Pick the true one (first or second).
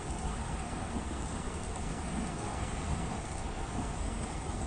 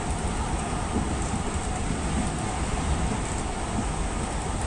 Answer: second